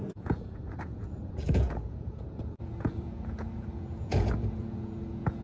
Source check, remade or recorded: remade